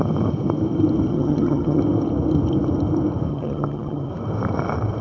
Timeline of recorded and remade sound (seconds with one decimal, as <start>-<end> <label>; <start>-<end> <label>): 0.0-1.1 recorded; 1.1-1.8 remade; 1.8-3.3 recorded; 3.3-4.1 remade; 4.1-5.0 recorded

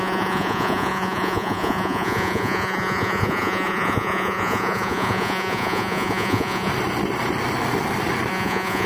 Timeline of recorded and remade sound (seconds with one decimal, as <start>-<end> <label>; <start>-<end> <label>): 0.0-6.7 remade; 6.7-8.3 recorded; 8.3-8.9 remade

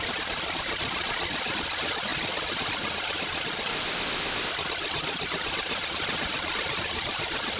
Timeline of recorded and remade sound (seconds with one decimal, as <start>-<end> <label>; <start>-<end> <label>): 0.0-3.7 remade; 3.7-4.5 recorded; 4.5-7.6 remade

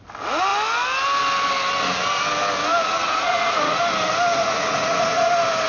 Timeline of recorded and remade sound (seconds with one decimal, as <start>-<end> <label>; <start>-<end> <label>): 0.0-2.8 recorded; 2.8-3.8 remade; 3.8-4.4 recorded; 4.4-5.3 remade; 5.3-5.7 recorded

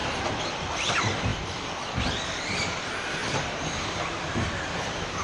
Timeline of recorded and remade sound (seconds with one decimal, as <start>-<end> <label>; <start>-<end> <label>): 0.0-0.7 remade; 0.7-1.3 recorded; 1.3-2.0 remade; 2.0-3.2 recorded; 3.2-4.6 remade; 4.6-5.2 recorded

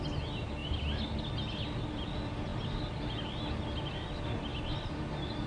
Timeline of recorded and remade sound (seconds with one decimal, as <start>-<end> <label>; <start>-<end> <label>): 0.0-5.5 recorded